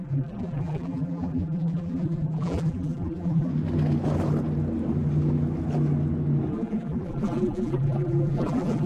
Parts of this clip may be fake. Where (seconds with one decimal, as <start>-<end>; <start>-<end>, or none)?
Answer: 0.0-3.5; 6.5-8.9